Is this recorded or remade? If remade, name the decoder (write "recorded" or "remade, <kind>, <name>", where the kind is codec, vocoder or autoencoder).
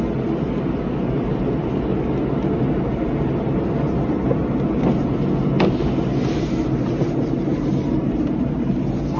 recorded